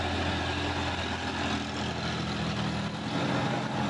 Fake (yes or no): no